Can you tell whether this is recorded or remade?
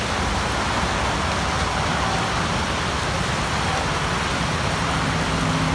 recorded